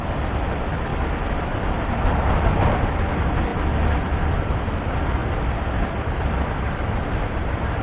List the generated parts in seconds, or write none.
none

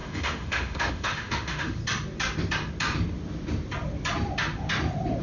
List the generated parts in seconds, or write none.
0.0-1.8 (autoencoder, DAC-VAE)

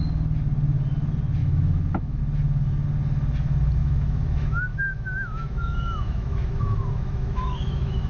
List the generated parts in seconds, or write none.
1.4-2.2 (autoencoder, DAC-VAE); 3.8-8.1

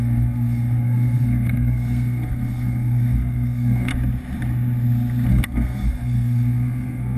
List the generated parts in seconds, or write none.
0.0-3.9 (codec, SNAC); 5.3-7.2

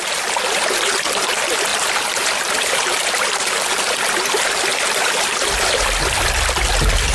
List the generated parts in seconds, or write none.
1.7-3.4 (vocoder, BigVGAN v2); 4.7-6.6

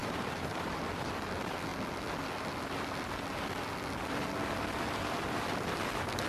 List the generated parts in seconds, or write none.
0.0-0.8 (vocoder, BigVGAN v2)

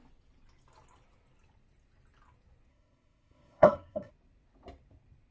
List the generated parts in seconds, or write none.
2.7-4.1 (codec, SNAC)